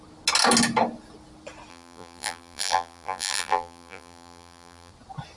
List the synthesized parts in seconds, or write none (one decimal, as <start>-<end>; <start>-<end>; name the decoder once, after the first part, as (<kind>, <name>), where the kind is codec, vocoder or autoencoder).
1.7-4.9 (vocoder, BigVGAN v2)